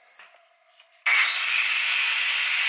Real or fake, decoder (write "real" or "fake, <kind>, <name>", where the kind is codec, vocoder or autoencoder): real